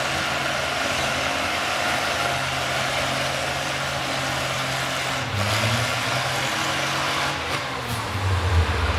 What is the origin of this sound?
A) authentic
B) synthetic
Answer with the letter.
A